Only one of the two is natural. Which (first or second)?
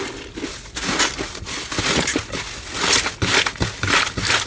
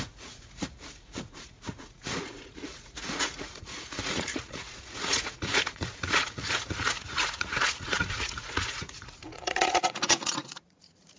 first